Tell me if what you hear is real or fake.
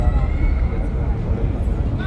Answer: real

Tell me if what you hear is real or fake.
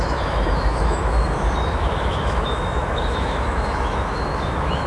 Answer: fake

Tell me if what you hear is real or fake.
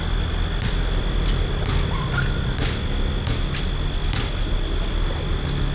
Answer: real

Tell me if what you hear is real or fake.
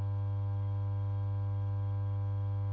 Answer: real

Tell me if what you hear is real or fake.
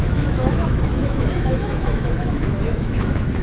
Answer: fake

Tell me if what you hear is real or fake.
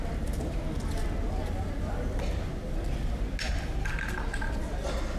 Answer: real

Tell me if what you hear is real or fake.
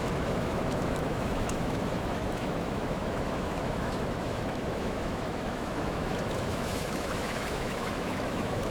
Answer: fake